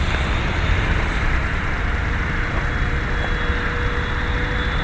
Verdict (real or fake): real